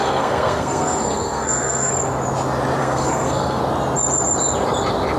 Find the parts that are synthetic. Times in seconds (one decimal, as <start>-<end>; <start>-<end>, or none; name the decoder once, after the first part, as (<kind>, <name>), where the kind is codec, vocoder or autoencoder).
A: 0.0-1.9 (codec, SNAC); 2.8-3.6